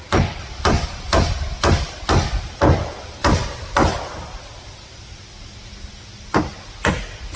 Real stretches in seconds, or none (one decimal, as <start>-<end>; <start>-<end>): 2.0-7.4